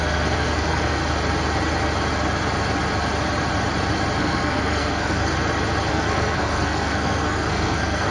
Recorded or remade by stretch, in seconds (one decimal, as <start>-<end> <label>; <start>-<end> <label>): 0.0-1.0 remade; 1.0-4.2 recorded; 4.2-5.3 remade; 5.3-5.9 recorded; 5.9-8.1 remade